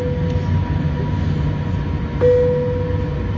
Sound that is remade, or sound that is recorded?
recorded